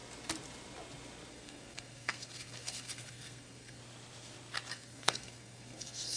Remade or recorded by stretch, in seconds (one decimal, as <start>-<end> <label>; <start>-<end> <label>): 0.0-1.3 recorded; 1.3-3.8 remade; 3.8-4.7 recorded; 4.7-6.2 remade

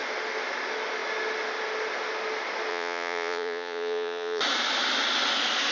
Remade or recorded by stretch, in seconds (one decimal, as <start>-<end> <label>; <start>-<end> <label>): 0.0-2.7 recorded; 2.7-4.4 remade; 4.4-5.7 recorded

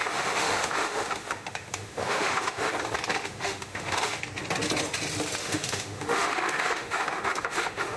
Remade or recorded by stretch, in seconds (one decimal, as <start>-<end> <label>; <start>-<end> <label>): 0.0-2.7 remade; 2.7-3.2 recorded; 3.2-4.2 remade; 4.2-5.4 recorded; 5.4-8.0 remade

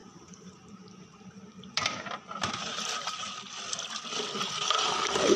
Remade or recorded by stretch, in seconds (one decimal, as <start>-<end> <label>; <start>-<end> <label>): 0.0-3.2 remade; 3.2-5.4 recorded